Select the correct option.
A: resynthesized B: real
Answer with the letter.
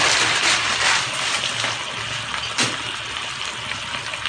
B